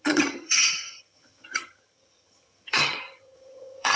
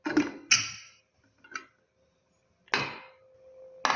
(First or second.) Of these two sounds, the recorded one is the second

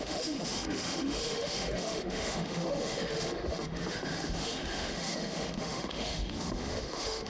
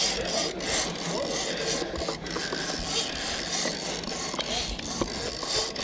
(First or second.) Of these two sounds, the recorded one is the second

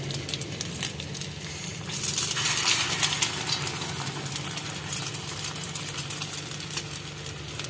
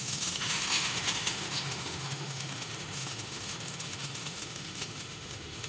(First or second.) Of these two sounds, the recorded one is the first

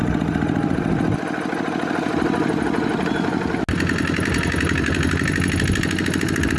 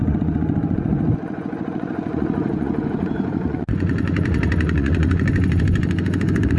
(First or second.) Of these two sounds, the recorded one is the first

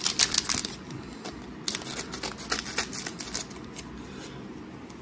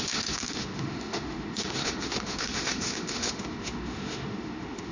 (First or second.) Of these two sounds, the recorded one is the first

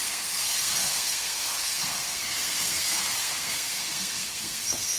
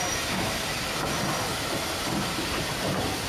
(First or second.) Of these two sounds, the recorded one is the second